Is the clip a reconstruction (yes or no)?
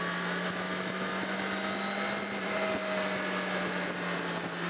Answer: no